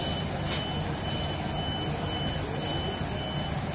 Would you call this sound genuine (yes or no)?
yes